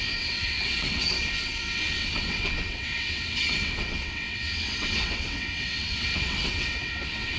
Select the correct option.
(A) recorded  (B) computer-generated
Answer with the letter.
B